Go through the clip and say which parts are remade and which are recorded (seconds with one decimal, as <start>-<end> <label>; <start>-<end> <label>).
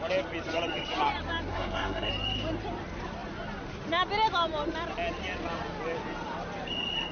0.0-1.5 recorded; 1.5-2.1 remade; 2.1-7.1 recorded